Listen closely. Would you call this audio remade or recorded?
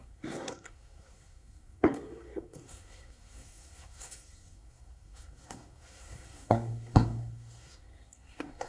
remade